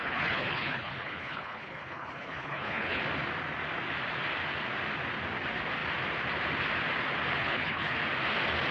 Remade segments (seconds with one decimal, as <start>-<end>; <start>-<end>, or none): 0.0-3.0; 7.4-8.0